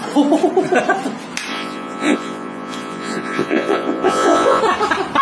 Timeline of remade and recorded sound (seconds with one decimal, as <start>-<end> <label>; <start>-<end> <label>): 0.0-1.5 recorded; 1.5-4.6 remade; 4.6-5.2 recorded